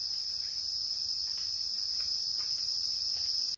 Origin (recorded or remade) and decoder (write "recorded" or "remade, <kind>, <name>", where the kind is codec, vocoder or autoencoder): recorded